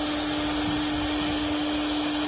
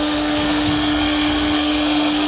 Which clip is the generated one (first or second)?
second